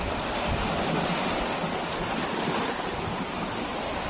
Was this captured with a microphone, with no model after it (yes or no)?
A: yes